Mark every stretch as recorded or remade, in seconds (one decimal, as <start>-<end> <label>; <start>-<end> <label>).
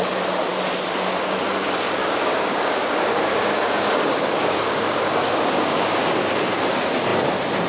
0.0-2.0 recorded; 2.0-6.3 remade; 6.3-7.7 recorded